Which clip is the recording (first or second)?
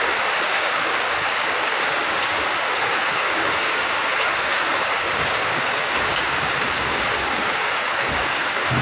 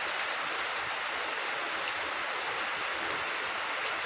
second